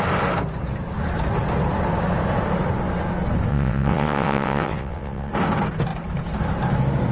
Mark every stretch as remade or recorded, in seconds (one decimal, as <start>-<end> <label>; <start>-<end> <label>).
0.0-3.5 recorded; 3.5-5.3 remade; 5.3-7.1 recorded

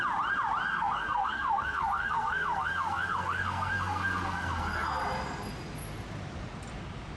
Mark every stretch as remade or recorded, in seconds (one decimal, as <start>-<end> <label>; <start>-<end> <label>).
0.0-0.7 recorded; 0.7-5.0 remade; 5.0-7.2 recorded

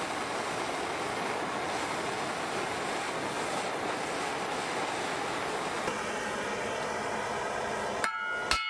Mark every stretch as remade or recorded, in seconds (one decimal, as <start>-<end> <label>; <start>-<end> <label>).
0.0-8.7 recorded